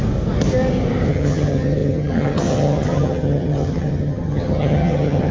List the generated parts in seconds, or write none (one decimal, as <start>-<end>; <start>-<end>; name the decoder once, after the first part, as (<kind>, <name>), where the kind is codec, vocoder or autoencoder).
1.1-5.3 (vocoder, HiFi-GAN)